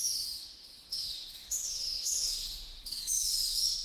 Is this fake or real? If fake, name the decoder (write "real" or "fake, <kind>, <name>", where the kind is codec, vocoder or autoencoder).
fake, autoencoder, DAC-VAE